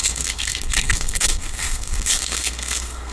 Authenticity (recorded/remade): remade